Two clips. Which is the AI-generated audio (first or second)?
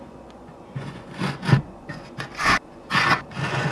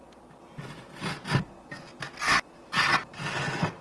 first